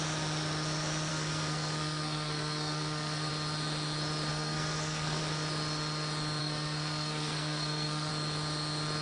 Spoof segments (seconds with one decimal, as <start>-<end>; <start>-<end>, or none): 1.1-3.3; 4.3-5.2; 6.4-8.1